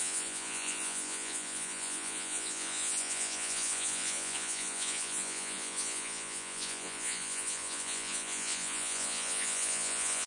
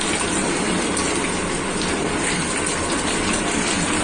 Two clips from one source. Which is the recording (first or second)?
second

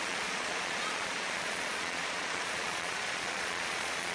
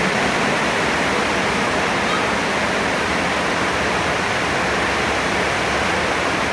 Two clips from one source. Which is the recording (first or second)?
second